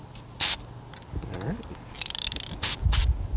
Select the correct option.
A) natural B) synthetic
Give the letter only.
A